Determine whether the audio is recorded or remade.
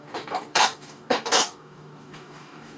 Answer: remade